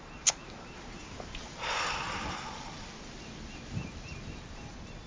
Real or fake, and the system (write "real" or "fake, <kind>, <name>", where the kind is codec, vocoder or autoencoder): real